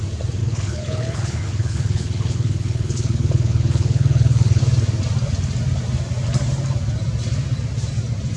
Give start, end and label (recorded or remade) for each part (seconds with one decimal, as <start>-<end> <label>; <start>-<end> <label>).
0.0-0.4 recorded; 0.4-4.6 remade; 4.6-8.4 recorded